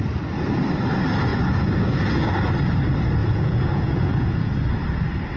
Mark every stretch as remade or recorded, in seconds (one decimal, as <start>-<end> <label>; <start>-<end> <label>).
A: 0.0-1.3 recorded; 1.3-2.5 remade; 2.5-3.2 recorded; 3.2-4.5 remade; 4.5-5.4 recorded